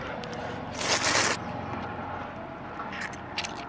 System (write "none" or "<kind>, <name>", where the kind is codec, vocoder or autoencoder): none